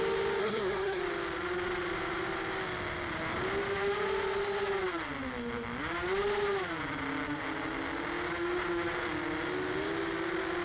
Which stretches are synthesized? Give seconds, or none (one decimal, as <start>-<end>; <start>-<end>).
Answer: 0.4-1.0